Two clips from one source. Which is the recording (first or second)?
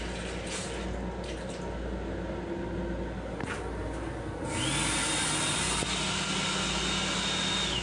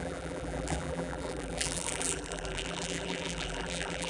first